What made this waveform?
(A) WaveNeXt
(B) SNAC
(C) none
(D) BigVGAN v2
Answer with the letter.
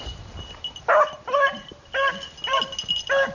C